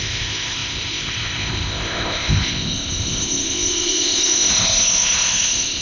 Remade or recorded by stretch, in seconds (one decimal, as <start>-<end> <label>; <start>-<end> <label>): 0.0-5.8 remade